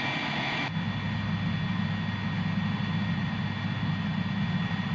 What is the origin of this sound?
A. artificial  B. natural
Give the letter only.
B